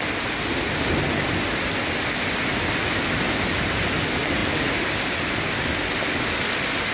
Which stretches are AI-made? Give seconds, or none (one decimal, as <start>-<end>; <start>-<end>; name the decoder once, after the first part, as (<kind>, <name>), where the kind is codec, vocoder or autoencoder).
none